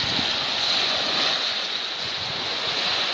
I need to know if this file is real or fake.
fake